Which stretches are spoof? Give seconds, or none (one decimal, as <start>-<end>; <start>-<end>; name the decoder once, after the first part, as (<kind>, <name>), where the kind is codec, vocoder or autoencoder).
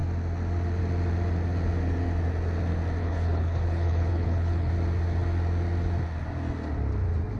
3.0-4.7 (codec, HILCodec)